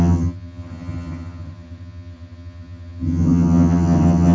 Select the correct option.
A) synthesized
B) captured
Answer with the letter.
A